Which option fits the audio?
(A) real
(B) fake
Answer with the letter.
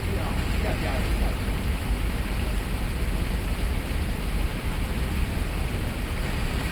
A